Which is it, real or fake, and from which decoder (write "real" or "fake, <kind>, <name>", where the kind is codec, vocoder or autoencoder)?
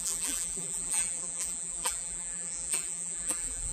fake, vocoder, BigVGAN v2